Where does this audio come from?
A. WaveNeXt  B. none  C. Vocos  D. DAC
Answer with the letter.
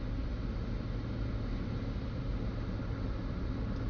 B